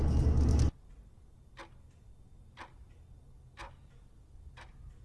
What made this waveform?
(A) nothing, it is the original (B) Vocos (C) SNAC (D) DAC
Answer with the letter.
A